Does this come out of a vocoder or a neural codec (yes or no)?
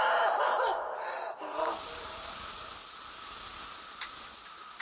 no